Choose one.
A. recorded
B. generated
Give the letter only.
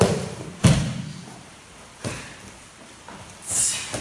A